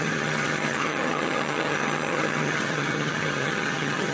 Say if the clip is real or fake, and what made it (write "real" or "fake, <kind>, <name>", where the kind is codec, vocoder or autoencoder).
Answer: fake, vocoder, HiFi-GAN